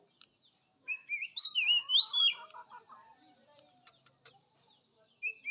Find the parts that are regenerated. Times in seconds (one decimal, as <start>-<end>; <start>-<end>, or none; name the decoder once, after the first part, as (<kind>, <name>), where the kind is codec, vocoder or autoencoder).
0.7-2.0 (autoencoder, DAC-VAE)